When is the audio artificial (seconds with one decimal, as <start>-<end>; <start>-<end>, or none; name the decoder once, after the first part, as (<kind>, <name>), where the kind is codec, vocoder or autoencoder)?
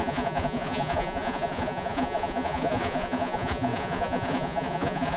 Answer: 0.0-5.2 (vocoder, Vocos)